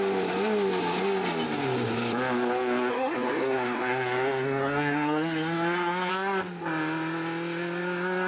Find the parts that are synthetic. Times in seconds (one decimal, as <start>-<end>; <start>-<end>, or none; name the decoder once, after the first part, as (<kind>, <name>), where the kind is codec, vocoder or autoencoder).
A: 2.9-6.1 (codec, SNAC)